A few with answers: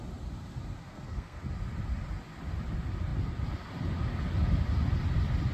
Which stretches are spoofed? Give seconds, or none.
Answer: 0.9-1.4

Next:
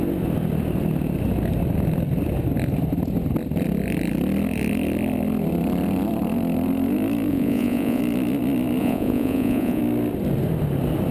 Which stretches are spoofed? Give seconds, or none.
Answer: 7.3-8.0; 8.8-9.8